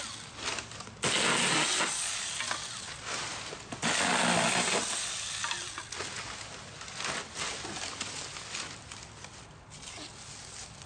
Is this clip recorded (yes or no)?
yes